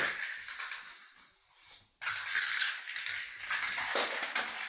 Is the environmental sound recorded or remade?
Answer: recorded